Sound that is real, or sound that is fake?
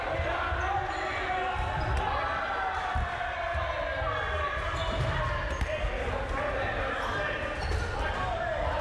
real